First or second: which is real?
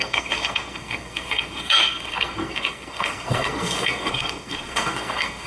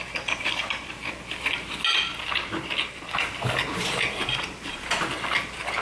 second